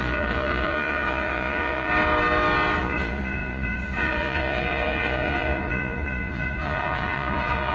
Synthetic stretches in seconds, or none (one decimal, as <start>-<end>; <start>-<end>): 0.0-1.9; 2.8-7.7